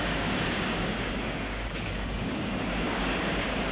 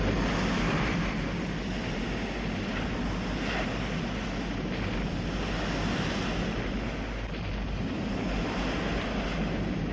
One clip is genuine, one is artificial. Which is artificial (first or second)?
first